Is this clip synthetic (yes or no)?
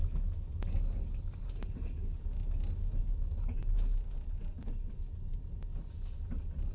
no